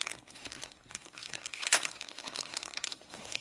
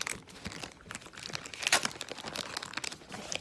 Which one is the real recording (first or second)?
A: second